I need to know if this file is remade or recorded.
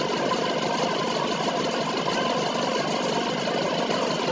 recorded